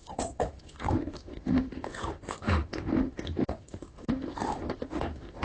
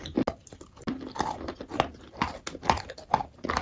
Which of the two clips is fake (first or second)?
first